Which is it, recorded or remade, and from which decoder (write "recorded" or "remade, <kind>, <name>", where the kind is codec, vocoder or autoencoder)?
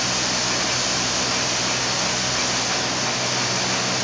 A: recorded